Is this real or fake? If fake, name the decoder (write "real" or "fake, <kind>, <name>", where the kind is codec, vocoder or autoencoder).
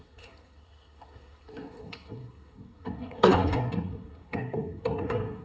fake, codec, SNAC